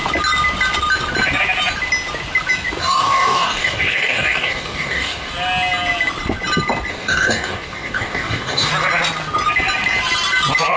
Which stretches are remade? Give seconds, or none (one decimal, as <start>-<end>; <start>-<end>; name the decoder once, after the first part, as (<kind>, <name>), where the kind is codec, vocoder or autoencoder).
2.8-5.3 (codec, DAC); 6.9-8.7